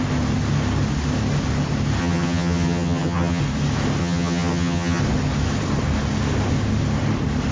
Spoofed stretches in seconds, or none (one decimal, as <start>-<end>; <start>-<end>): 2.0-3.4; 4.0-5.0